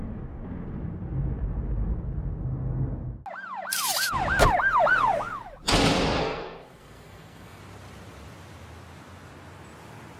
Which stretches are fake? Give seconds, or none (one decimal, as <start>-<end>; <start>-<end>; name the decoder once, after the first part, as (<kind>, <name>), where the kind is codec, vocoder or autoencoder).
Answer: 6.2-7.6 (codec, SNAC)